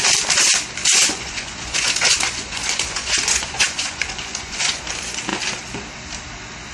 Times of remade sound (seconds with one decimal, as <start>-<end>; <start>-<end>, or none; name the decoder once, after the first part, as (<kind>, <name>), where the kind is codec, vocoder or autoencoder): 0.8-4.8 (vocoder, Vocos)

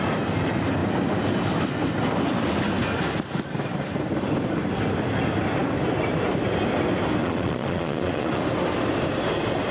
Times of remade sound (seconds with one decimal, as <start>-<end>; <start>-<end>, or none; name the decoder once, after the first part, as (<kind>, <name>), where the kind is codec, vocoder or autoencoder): 7.2-8.4 (vocoder, Vocos)

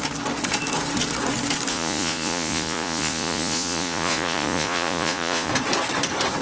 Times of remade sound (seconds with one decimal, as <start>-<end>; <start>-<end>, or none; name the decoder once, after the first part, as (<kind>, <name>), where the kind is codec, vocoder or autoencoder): 1.7-5.5 (vocoder, Vocos)

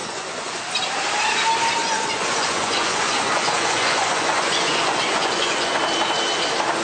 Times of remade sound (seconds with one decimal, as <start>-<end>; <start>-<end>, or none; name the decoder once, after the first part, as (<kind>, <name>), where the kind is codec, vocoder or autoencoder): 0.0-0.6 (vocoder, Vocos); 1.8-5.8

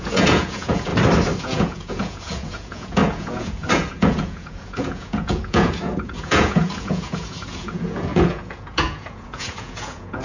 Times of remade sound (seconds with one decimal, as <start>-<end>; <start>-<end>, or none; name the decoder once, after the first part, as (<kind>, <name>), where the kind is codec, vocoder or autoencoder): 0.0-0.9 (vocoder, Vocos); 1.4-10.2